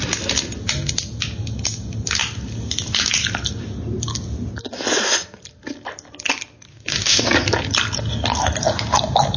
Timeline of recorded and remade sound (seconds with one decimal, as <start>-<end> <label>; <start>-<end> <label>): 0.0-6.7 recorded; 6.7-7.2 remade; 7.2-9.4 recorded